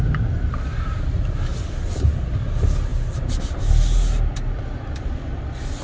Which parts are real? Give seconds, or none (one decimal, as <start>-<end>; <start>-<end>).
0.0-5.8